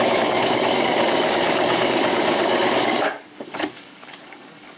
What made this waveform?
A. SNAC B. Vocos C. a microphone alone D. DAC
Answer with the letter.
D